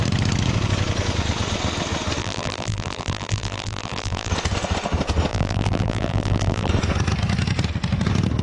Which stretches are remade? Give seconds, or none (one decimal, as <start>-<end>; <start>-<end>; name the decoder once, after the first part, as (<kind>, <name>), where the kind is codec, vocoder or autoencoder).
2.2-4.3 (vocoder, BigVGAN v2); 5.3-6.7

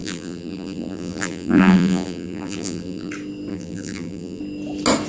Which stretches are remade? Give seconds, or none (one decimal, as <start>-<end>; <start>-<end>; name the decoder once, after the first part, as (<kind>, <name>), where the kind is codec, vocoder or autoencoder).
0.0-3.1 (vocoder, BigVGAN v2); 3.5-4.4

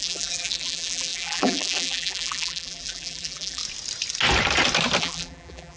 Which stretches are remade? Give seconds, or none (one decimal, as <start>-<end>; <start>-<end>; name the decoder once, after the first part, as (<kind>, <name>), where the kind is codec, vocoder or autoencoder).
0.0-3.6 (vocoder, BigVGAN v2); 5.0-5.8

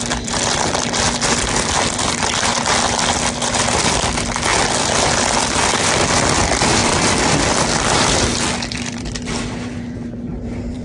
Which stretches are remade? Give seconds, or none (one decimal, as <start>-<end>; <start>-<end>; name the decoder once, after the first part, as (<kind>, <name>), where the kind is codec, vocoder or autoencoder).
0.0-2.5 (vocoder, BigVGAN v2); 3.3-4.5; 5.7-10.8

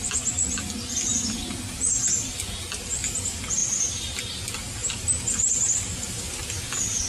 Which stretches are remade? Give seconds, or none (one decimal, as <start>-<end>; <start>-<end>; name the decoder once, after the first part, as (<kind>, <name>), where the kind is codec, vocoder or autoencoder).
3.6-4.2 (vocoder, BigVGAN v2); 4.8-6.4